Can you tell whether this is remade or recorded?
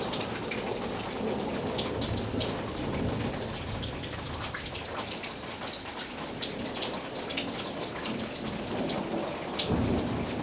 recorded